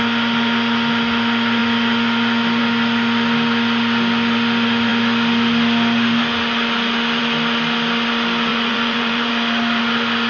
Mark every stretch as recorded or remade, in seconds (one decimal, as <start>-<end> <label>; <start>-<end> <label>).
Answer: 0.0-8.5 recorded; 8.5-9.3 remade; 9.3-10.3 recorded